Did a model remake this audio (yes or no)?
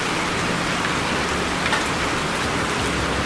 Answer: no